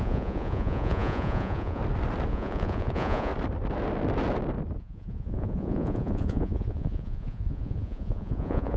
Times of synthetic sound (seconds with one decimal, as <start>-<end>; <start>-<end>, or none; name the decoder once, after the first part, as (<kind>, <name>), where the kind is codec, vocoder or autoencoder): 0.0-1.8 (vocoder, Vocos); 2.3-3.3; 4.8-8.8

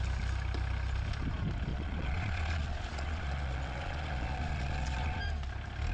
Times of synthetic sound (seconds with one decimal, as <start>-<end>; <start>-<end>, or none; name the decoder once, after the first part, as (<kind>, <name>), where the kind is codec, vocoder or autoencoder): 1.7-5.2 (vocoder, Vocos)

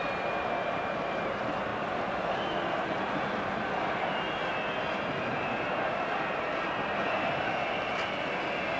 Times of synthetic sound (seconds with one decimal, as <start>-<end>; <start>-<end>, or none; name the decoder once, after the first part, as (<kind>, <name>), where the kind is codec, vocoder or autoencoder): none

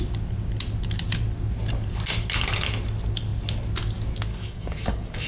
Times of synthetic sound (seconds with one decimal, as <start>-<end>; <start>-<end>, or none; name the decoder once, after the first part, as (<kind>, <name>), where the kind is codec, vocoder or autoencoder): 4.3-5.3 (codec, DAC)